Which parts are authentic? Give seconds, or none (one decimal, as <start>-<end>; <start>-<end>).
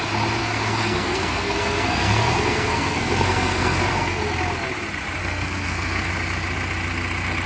0.0-0.4; 4.2-5.2; 6.1-7.5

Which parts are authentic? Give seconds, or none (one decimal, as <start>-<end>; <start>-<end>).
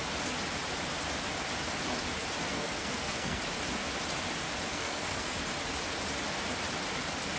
0.0-2.5; 3.4-4.7; 5.4-7.4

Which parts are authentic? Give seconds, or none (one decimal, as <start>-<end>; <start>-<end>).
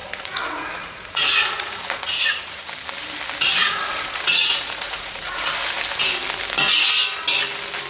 2.6-3.6; 5.4-7.9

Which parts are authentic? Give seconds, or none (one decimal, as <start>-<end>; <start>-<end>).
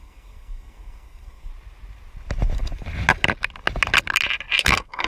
1.5-4.6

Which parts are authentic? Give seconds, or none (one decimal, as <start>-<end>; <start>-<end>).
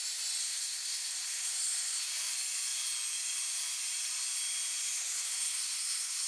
0.0-0.4; 2.1-5.0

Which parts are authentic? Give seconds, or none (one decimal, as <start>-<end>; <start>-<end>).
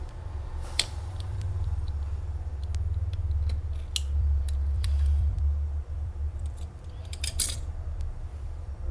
2.5-4.2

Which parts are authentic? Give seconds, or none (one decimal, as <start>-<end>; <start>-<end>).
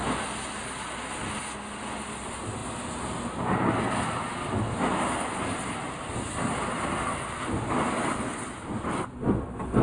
0.0-9.8